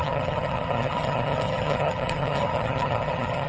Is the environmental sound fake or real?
fake